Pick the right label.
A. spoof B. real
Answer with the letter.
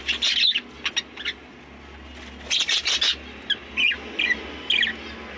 B